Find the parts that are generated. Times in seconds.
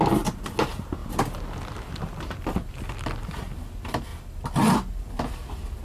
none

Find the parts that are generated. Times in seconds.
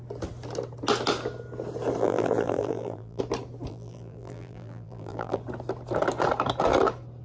2.0-3.2 (vocoder, BigVGAN v2); 3.7-5.4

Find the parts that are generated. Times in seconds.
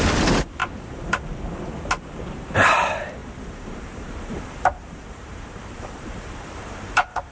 0.6-1.2 (vocoder, BigVGAN v2); 3.2-7.3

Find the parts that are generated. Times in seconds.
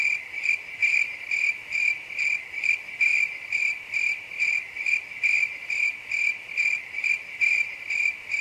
0.8-2.2 (vocoder, BigVGAN v2); 3.1-8.4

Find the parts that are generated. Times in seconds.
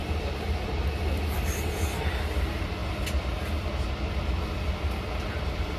none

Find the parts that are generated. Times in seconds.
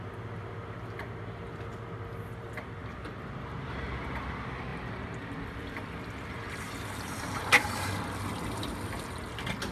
4.7-9.2 (vocoder, BigVGAN v2)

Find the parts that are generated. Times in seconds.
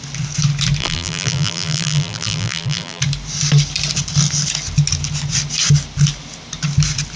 0.8-3.0 (vocoder, BigVGAN v2)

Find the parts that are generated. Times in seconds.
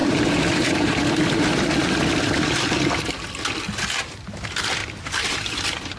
0.0-1.4 (vocoder, BigVGAN v2); 4.8-5.4